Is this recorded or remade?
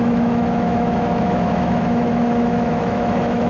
remade